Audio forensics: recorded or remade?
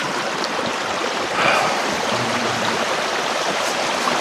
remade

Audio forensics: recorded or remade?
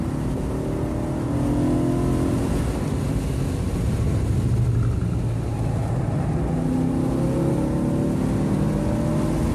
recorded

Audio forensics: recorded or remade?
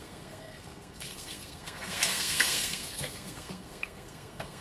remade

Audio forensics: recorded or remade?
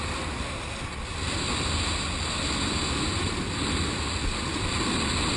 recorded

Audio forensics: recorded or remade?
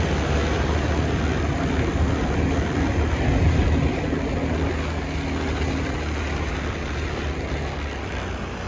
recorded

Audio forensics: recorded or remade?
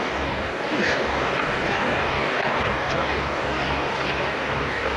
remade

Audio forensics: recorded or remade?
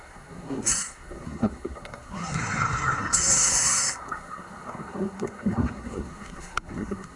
remade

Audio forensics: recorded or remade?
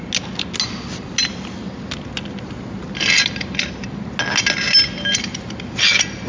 recorded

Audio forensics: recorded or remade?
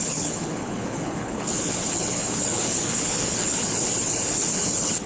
remade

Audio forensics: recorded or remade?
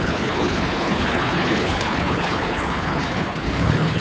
remade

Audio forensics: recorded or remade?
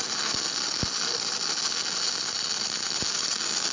recorded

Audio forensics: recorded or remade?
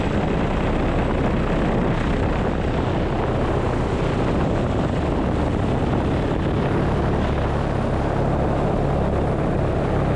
recorded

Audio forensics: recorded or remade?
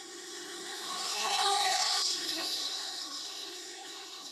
remade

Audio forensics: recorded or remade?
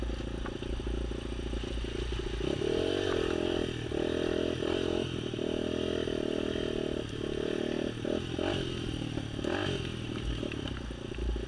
recorded